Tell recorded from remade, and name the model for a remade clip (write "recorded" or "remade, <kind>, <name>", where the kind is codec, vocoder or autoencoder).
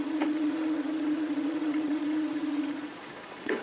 remade, vocoder, Vocos